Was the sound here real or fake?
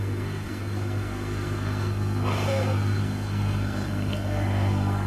fake